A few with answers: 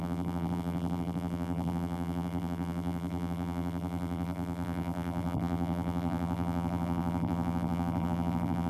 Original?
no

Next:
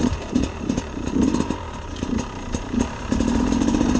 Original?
no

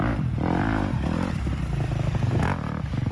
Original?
no